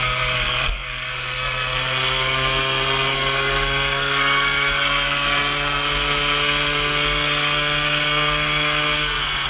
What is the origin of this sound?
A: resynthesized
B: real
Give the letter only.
A